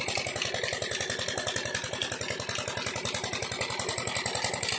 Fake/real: real